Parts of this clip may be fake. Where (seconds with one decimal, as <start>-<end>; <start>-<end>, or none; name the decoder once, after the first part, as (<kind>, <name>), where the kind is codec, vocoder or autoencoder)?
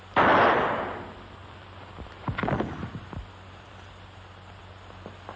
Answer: 1.4-4.6 (vocoder, BigVGAN v2)